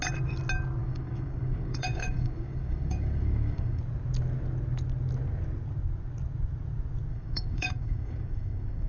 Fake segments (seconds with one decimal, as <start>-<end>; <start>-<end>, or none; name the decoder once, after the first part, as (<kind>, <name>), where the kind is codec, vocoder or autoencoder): 0.8-3.8 (codec, DAC); 7.1-8.9